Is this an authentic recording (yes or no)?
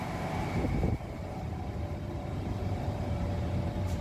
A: no